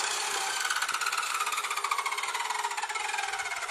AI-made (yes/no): no